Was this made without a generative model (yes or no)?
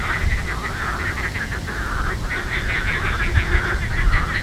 yes